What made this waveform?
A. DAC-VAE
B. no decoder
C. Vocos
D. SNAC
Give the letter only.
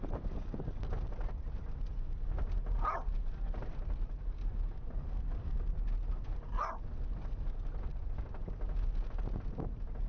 B